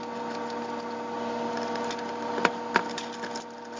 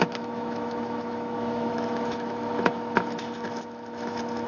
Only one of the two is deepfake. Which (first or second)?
second